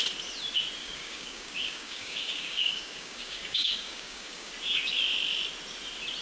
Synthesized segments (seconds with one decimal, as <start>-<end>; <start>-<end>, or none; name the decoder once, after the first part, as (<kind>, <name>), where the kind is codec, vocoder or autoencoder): 0.8-4.5 (codec, DAC)